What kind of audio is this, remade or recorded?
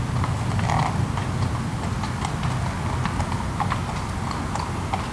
recorded